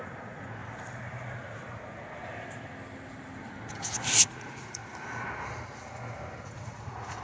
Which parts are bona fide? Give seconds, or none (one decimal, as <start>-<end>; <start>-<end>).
0.6-4.2; 4.8-6.4